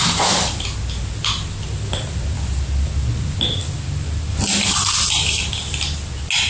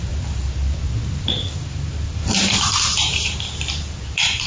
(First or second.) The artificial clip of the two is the second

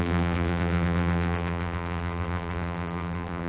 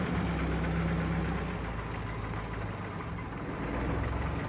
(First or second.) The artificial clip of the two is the first